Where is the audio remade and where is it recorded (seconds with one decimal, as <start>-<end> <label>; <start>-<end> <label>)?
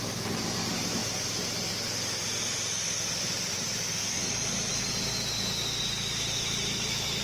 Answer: 0.0-1.0 remade; 1.0-3.1 recorded; 3.1-4.7 remade; 4.7-5.8 recorded; 5.8-7.2 remade